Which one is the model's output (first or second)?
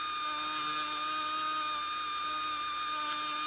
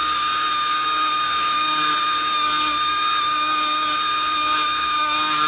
second